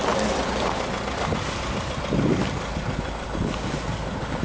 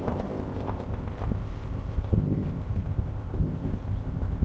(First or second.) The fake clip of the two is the second